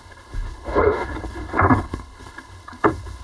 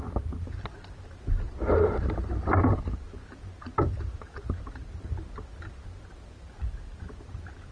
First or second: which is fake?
first